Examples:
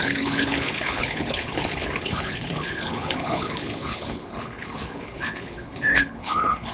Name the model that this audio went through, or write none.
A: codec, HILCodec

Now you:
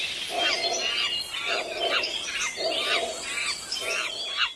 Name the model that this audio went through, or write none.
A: none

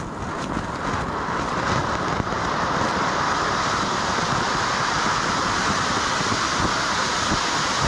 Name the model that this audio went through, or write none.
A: none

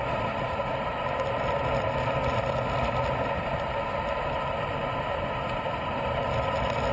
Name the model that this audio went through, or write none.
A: none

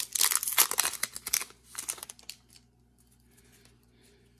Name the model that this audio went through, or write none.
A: none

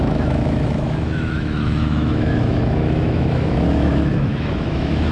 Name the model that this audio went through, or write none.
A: autoencoder, DAC-VAE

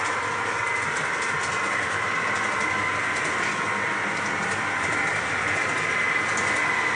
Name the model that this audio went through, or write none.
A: none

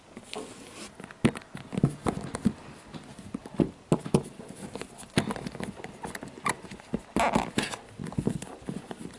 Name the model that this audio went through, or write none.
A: none